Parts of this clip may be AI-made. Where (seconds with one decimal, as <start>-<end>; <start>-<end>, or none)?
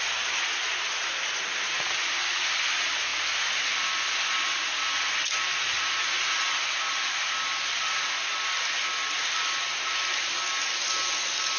none